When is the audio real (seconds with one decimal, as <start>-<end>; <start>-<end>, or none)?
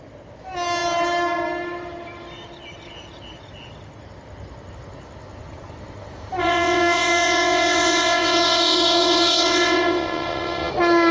0.0-6.4; 10.7-11.1